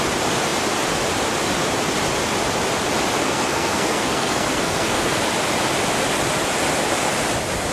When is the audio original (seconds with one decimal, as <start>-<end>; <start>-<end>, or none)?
0.0-3.2; 5.2-7.7